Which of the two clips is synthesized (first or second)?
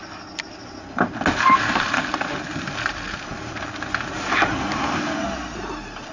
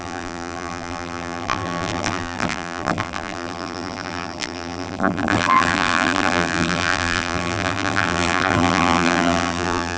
second